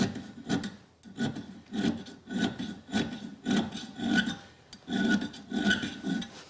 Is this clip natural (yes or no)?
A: yes